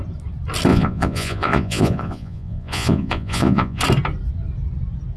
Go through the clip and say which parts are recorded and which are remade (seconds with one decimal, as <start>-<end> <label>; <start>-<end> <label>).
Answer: 0.0-0.7 recorded; 0.7-3.8 remade; 3.8-5.2 recorded